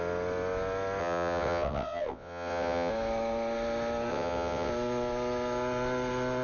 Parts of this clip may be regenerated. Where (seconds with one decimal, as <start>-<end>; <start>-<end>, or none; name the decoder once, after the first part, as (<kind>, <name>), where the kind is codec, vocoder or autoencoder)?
1.0-2.9 (vocoder, WaveNeXt); 4.1-4.7